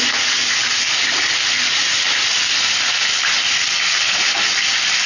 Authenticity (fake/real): real